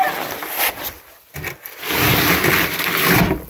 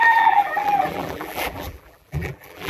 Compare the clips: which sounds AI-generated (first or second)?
second